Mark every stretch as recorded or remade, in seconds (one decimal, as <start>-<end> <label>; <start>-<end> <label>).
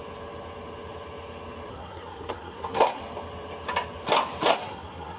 0.0-1.7 recorded; 1.7-3.0 remade; 3.0-4.5 recorded; 4.5-5.2 remade